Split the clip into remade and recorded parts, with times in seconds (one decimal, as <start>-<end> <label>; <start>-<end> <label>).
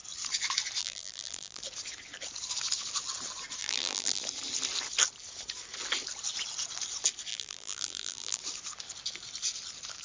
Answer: 0.0-0.8 recorded; 0.8-1.6 remade; 1.6-3.6 recorded; 3.6-4.2 remade; 4.2-7.3 recorded; 7.3-8.4 remade; 8.4-10.0 recorded